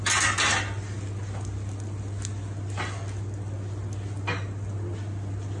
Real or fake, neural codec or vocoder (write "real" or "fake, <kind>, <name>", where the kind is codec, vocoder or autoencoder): real